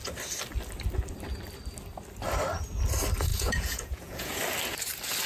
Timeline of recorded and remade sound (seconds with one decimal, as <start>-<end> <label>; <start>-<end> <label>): 0.0-3.3 recorded; 3.3-4.4 remade; 4.4-5.3 recorded